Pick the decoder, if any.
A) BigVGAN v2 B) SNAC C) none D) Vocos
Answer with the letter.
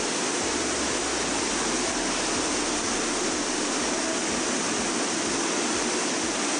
C